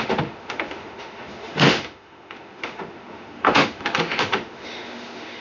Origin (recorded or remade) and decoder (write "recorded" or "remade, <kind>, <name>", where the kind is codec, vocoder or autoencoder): remade, autoencoder, DAC-VAE